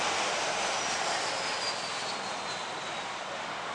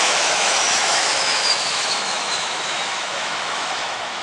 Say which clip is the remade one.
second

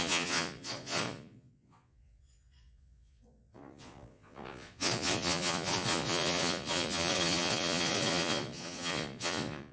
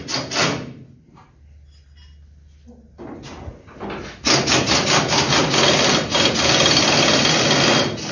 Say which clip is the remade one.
first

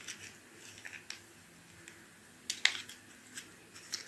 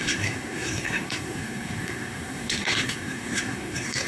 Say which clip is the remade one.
second